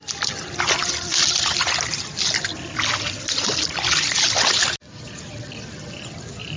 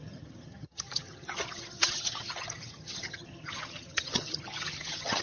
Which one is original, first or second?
first